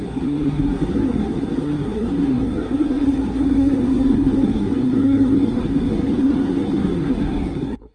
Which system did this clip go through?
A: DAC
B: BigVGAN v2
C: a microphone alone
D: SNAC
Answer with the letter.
D